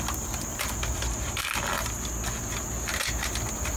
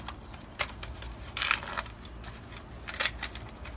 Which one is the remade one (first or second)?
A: second